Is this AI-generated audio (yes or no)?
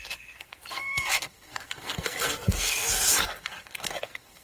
yes